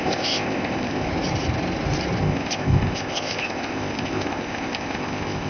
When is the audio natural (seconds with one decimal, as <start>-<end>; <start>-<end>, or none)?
1.1-2.2